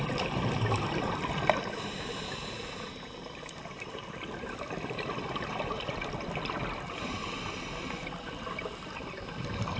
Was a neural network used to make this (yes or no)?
no